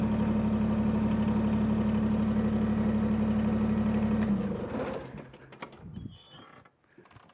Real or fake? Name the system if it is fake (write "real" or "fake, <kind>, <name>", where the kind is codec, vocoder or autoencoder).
real